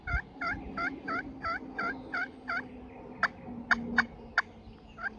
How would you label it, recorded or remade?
recorded